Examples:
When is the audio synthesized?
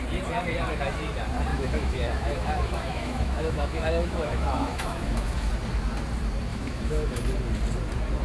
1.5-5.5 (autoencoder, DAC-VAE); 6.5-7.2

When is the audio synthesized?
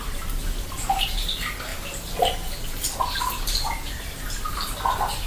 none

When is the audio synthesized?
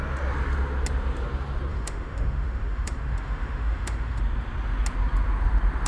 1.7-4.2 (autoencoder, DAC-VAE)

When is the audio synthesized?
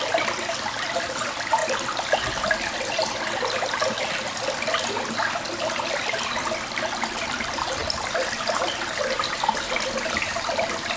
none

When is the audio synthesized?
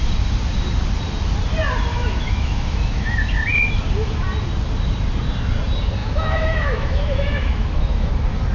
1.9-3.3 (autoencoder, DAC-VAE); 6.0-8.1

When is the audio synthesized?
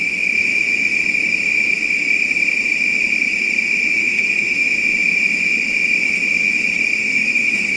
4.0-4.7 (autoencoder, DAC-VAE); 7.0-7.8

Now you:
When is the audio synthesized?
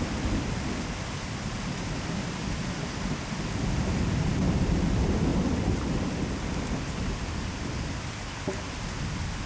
none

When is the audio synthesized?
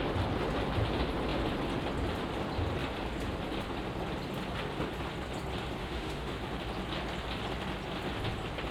5.8-6.3 (autoencoder, DAC-VAE)